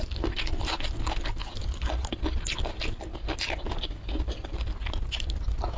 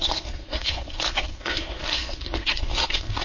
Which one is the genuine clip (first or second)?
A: first